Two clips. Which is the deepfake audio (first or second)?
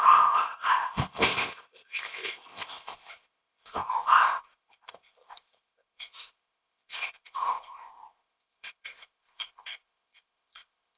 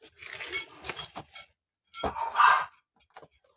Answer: first